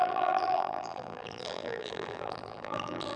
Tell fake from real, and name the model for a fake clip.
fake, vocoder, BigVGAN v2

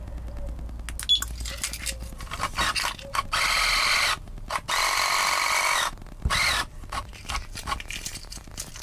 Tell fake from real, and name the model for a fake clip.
real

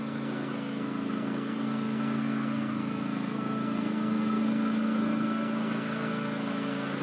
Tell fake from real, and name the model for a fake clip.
fake, codec, SNAC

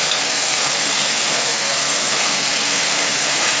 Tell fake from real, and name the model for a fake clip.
fake, codec, SNAC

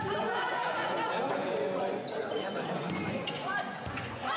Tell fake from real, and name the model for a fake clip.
fake, vocoder, Vocos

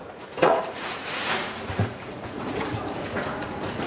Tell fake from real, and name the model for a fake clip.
fake, vocoder, Vocos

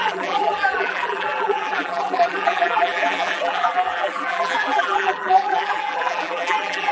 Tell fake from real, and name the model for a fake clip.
fake, vocoder, BigVGAN v2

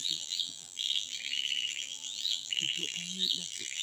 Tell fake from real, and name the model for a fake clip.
fake, vocoder, BigVGAN v2